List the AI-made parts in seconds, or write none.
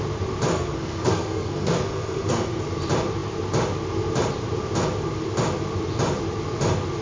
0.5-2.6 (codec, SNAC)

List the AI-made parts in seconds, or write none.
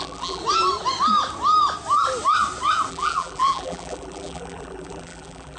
0.0-0.4 (vocoder, BigVGAN v2); 2.9-5.6